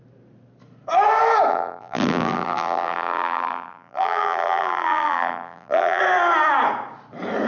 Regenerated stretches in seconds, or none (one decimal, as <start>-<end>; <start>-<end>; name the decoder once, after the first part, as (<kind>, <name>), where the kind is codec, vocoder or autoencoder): 1.5-6.0 (vocoder, BigVGAN v2)